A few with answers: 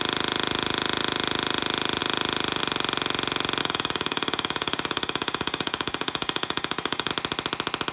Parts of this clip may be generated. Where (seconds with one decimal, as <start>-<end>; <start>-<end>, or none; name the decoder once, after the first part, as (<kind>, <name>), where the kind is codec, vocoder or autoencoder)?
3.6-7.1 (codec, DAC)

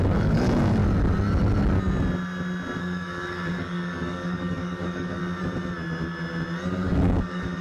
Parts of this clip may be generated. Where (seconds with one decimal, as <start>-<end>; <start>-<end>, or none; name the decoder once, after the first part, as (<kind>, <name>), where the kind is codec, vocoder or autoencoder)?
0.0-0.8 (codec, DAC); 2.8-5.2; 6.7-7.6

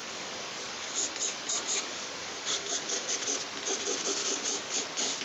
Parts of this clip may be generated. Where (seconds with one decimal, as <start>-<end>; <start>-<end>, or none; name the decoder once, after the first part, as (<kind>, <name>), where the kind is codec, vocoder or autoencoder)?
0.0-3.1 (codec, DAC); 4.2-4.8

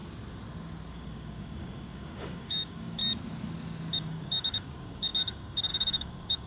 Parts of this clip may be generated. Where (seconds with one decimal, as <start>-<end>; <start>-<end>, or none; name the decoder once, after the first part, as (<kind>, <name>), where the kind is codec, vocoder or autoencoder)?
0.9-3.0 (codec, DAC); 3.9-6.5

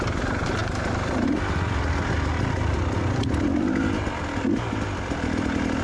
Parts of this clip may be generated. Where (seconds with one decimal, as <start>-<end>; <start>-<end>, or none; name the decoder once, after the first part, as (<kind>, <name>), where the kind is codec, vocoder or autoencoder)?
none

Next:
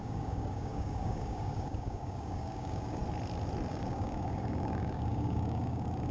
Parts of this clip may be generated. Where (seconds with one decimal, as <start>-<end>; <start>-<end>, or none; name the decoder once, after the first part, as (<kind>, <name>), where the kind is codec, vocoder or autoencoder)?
0.0-3.0 (codec, DAC); 3.7-6.1

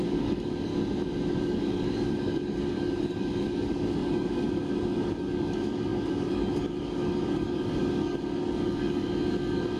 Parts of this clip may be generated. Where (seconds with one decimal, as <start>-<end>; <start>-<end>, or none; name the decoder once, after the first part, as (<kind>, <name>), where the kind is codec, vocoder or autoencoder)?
0.0-0.7 (codec, DAC); 1.3-9.8

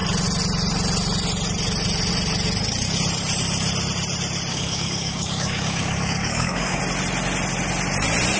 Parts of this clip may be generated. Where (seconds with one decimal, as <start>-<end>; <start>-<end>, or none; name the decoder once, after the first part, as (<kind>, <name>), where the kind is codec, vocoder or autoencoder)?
4.5-6.8 (codec, DAC)